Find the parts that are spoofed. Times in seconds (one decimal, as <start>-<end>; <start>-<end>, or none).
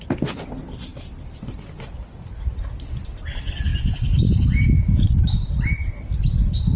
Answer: none